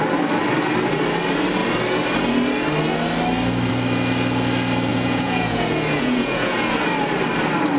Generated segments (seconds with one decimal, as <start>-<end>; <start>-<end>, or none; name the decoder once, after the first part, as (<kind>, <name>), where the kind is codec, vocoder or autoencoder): 4.9-6.8 (vocoder, Vocos)